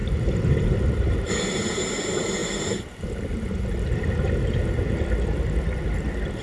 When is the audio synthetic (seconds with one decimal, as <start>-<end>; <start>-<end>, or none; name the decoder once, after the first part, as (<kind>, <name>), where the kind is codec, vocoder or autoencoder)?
0.0-1.3 (vocoder, BigVGAN v2)